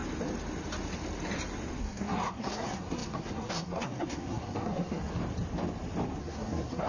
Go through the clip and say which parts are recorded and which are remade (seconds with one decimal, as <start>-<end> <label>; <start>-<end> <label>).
0.0-1.8 recorded; 1.8-5.1 remade; 5.1-6.2 recorded; 6.2-6.9 remade